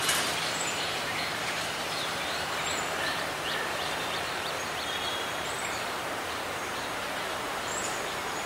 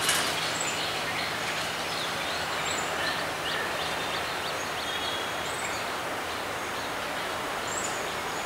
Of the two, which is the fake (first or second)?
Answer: first